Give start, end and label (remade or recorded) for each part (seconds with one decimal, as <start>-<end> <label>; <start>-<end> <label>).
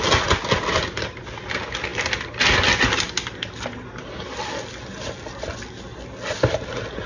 0.0-7.1 recorded